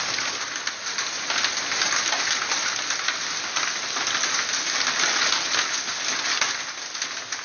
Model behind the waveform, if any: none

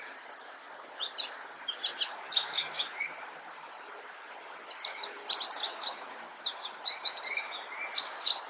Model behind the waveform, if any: none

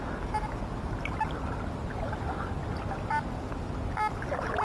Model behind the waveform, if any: none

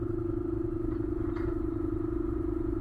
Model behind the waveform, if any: vocoder, BigVGAN v2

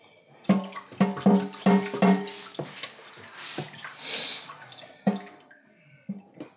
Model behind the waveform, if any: none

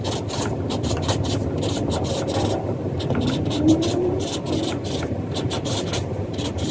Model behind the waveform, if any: vocoder, BigVGAN v2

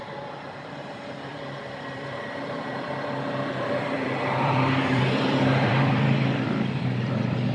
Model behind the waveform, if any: vocoder, BigVGAN v2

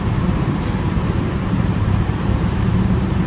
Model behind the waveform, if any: vocoder, BigVGAN v2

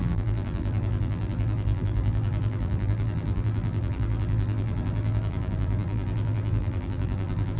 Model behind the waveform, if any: vocoder, BigVGAN v2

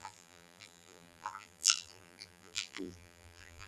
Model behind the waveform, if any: vocoder, BigVGAN v2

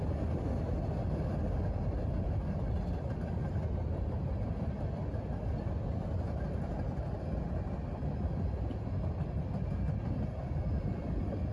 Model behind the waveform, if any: none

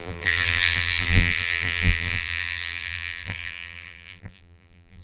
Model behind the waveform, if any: vocoder, BigVGAN v2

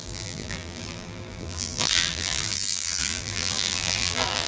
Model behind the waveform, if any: vocoder, BigVGAN v2